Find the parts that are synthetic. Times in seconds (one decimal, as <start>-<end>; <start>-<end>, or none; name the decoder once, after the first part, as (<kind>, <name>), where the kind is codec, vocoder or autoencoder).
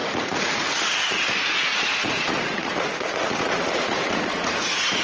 0.0-0.6 (vocoder, Vocos); 1.7-5.0